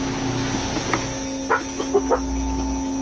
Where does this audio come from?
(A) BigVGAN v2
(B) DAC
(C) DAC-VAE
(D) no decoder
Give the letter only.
D